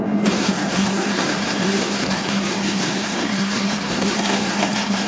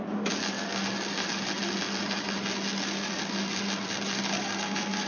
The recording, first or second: second